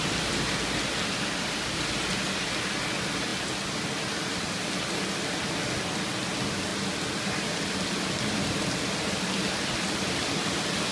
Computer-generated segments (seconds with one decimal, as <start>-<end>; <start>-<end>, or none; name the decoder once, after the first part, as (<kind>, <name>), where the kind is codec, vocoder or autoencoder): none